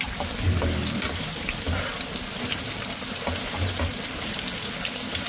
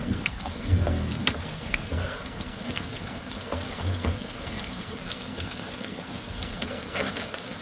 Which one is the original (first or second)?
first